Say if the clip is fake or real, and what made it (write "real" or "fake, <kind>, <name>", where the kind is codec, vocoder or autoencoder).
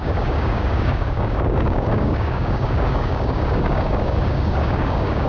fake, codec, DAC